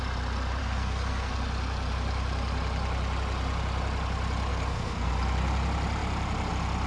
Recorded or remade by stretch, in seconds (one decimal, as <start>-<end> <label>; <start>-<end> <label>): 0.0-0.6 recorded; 0.6-1.3 remade; 1.3-4.5 recorded; 4.5-5.1 remade; 5.1-6.9 recorded